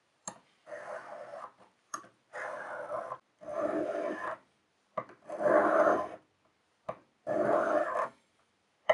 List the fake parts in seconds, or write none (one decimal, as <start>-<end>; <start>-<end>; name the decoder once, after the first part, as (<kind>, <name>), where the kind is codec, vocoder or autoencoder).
7.8-8.3 (codec, DAC)